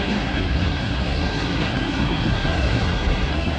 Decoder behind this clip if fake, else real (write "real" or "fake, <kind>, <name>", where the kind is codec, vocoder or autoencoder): fake, codec, SNAC